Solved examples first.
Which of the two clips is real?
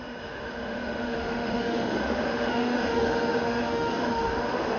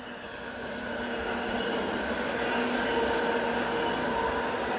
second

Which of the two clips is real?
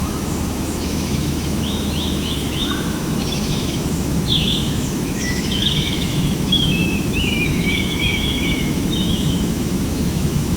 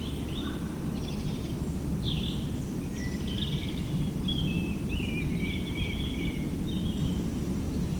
second